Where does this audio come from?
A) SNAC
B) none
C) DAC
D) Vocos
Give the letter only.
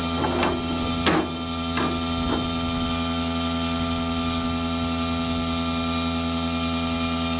B